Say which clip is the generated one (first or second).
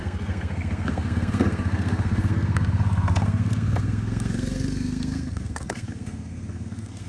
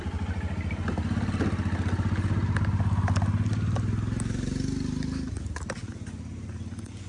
first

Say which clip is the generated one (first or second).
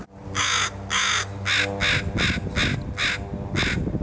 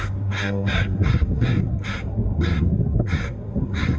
second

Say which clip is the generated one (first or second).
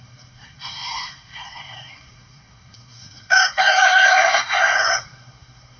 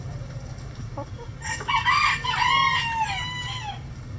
first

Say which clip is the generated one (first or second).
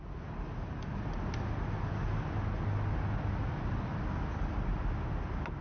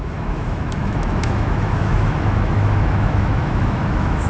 second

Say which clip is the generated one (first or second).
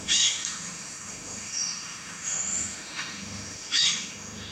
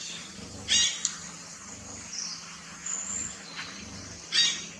first